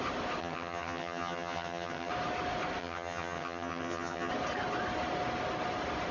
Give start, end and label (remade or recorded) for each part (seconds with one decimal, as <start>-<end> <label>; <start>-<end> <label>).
0.0-0.4 recorded; 0.4-2.1 remade; 2.1-2.8 recorded; 2.8-4.3 remade; 4.3-6.1 recorded